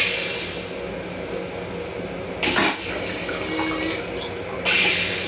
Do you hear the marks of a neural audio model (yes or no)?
no